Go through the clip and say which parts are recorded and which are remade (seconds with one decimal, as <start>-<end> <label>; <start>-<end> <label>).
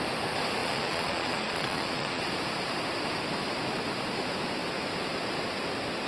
0.0-0.6 recorded; 0.6-2.2 remade; 2.2-6.1 recorded